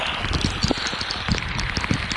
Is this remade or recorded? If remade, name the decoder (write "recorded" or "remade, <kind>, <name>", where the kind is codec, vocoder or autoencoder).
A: recorded